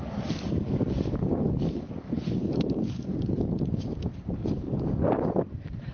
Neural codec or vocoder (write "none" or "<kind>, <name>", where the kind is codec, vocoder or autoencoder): codec, DAC